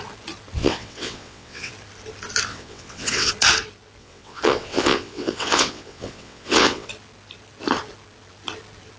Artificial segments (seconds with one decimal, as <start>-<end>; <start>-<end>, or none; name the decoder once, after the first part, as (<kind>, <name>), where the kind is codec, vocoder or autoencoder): 0.6-1.7 (vocoder, WaveNeXt); 2.5-3.3; 4.0-6.9